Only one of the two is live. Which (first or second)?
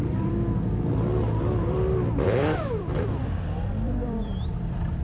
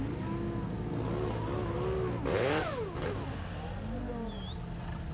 second